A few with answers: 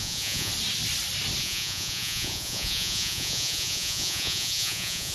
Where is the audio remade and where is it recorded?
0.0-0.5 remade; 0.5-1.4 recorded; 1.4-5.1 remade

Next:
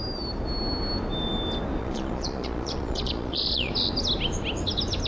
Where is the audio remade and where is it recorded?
0.0-1.8 recorded; 1.8-3.7 remade; 3.7-5.1 recorded